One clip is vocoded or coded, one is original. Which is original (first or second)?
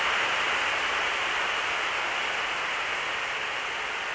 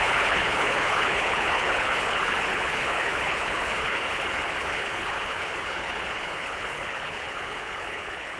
first